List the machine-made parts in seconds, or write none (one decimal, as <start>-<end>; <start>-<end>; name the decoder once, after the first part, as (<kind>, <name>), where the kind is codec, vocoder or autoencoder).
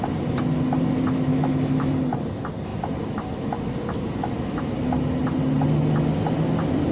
1.3-1.9 (autoencoder, DAC-VAE)